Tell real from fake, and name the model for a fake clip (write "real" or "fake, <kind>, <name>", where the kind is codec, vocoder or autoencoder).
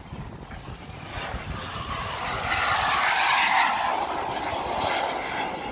real